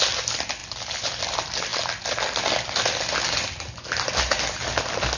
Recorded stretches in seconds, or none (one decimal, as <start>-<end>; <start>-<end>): 0.0-5.2